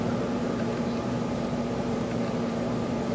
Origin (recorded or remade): remade